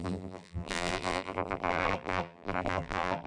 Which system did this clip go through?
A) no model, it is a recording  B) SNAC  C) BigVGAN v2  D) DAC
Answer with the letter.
C